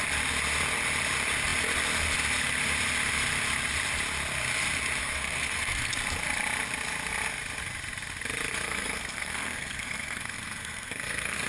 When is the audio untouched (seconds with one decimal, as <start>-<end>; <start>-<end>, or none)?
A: 0.0-5.0; 5.9-8.5

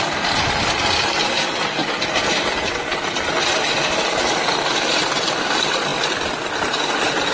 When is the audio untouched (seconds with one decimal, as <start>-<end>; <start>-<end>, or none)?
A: 1.8-3.5